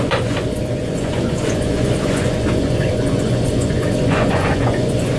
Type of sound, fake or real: fake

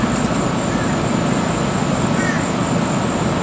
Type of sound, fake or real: real